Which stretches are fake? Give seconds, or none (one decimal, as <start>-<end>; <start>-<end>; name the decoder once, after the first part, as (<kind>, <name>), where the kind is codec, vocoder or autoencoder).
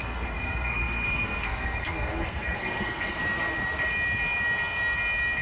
0.0-3.2 (codec, SNAC)